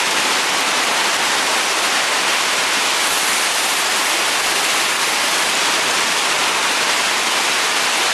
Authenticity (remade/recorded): recorded